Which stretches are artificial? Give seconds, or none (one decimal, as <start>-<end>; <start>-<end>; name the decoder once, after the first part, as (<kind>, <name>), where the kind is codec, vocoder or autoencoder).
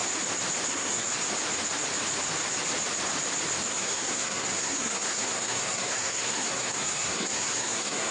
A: 0.7-1.1 (codec, SNAC); 3.7-8.1